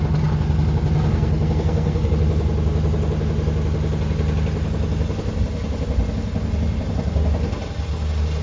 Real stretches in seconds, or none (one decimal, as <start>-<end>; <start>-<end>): 0.0-1.1; 2.1-8.4